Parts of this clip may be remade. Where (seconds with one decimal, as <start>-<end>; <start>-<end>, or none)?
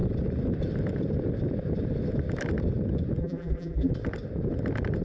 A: 3.2-3.9